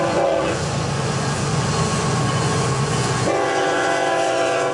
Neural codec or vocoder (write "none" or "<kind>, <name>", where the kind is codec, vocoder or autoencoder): vocoder, Vocos